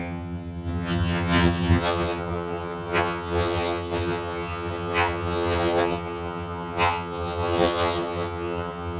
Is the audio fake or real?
fake